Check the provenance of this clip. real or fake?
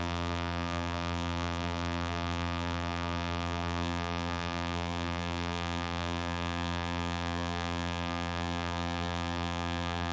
fake